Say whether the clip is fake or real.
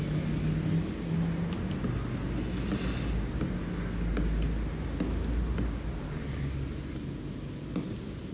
real